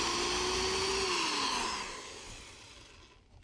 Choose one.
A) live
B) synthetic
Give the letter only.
A